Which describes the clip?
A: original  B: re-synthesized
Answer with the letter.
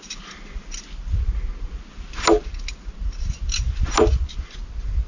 A